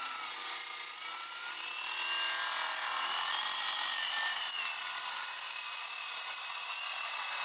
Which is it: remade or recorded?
recorded